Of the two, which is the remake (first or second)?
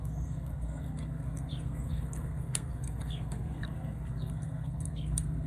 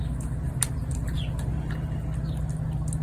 first